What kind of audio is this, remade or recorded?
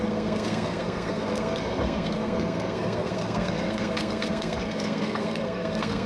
remade